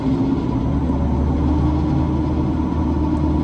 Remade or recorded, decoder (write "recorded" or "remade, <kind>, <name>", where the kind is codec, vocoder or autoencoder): recorded